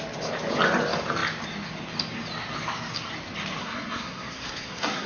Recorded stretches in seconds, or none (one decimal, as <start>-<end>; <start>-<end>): 0.0-3.6